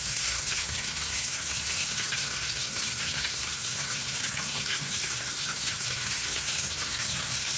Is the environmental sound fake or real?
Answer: fake